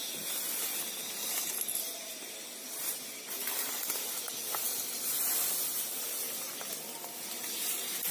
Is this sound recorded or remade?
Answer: recorded